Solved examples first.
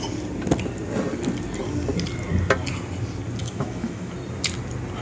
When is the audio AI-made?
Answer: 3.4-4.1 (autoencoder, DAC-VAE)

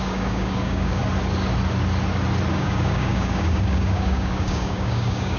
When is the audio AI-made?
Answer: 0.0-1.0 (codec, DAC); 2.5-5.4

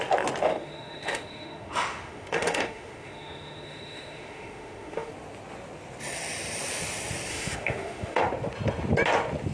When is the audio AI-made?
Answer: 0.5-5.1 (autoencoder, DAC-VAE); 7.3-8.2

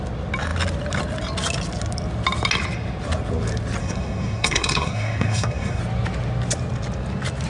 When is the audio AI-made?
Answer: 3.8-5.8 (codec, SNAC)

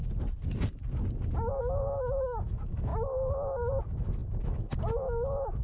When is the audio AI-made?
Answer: 1.6-2.9 (autoencoder, DAC-VAE); 3.8-5.6

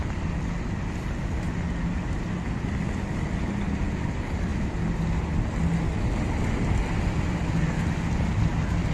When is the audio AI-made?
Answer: none

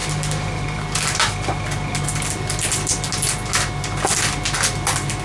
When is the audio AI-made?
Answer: none

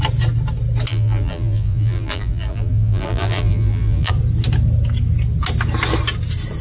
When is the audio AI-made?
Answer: 0.9-4.1 (vocoder, BigVGAN v2)